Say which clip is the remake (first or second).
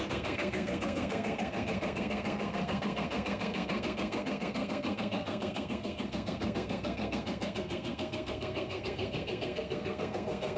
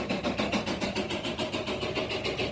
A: first